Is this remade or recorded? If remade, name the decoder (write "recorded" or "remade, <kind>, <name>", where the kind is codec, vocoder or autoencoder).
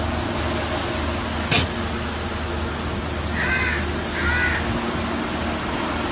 recorded